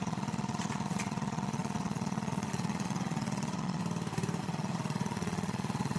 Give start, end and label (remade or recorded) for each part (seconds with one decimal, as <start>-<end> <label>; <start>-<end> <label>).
0.0-3.8 remade; 3.8-4.4 recorded; 4.4-6.0 remade